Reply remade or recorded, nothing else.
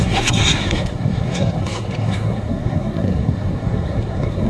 remade